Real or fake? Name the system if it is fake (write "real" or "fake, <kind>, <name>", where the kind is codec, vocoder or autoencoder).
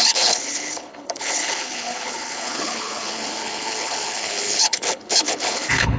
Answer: fake, codec, HILCodec